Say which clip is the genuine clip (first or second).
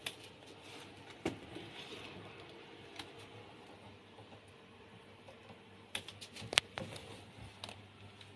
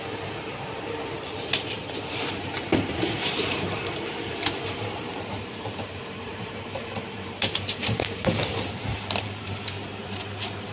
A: first